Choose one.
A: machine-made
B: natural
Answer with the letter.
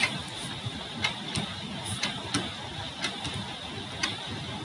B